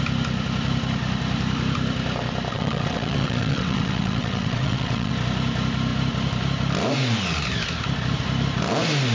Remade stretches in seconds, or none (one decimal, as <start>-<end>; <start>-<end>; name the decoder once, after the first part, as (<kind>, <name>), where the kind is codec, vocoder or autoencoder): 2.5-5.1 (vocoder, WaveNeXt)